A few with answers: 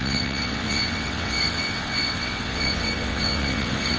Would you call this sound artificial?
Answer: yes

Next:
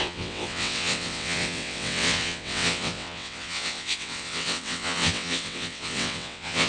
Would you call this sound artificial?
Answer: yes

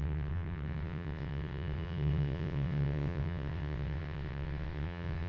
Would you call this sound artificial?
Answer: yes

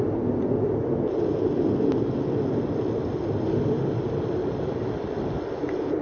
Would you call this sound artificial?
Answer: no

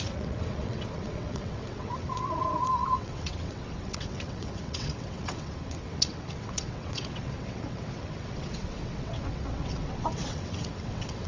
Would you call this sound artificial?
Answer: yes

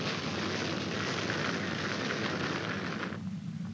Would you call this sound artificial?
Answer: no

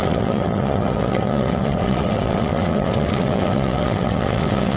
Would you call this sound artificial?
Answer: yes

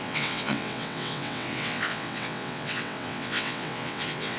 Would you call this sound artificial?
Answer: yes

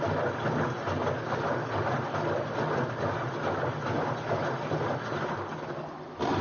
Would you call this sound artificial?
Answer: no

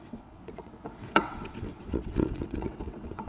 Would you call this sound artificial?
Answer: yes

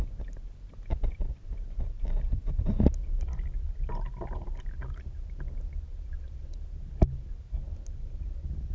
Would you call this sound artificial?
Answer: no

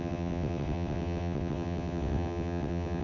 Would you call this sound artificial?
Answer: yes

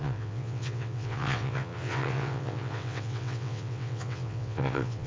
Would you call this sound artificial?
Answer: yes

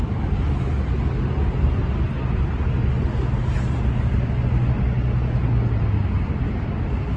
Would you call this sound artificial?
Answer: no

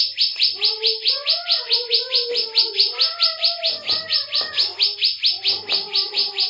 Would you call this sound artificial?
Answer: no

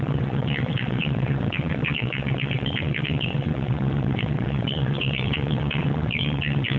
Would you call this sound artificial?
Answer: yes